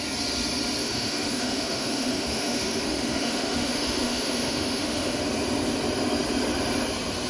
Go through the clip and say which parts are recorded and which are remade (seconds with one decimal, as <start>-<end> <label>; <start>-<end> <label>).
0.0-0.8 recorded; 0.8-5.2 remade; 5.2-7.3 recorded

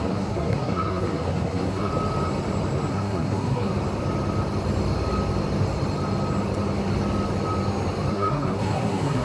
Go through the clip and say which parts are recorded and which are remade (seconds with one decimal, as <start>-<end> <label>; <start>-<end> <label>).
0.0-1.9 remade; 1.9-2.9 recorded; 2.9-3.7 remade; 3.7-8.1 recorded; 8.1-9.2 remade